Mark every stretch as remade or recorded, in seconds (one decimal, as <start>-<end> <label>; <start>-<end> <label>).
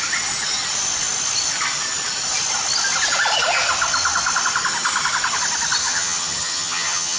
0.0-5.8 recorded; 5.8-7.2 remade